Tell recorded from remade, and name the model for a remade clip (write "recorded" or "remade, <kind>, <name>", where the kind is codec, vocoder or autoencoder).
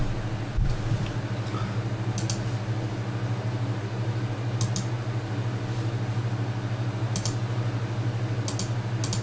recorded